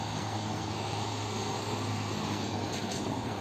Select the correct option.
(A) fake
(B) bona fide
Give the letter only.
A